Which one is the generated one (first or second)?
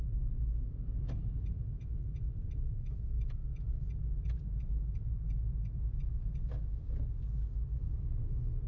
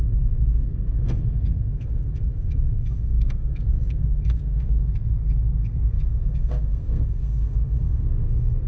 second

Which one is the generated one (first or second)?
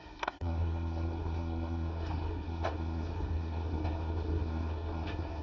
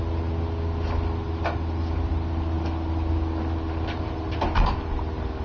first